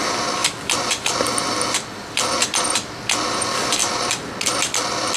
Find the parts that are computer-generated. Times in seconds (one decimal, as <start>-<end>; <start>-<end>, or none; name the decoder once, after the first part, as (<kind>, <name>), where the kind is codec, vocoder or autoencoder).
0.4-3.0 (vocoder, BigVGAN v2); 3.8-4.3